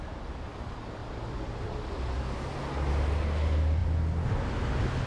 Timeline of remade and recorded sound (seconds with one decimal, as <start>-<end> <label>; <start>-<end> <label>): 0.0-1.0 recorded; 1.0-2.0 remade; 2.0-5.1 recorded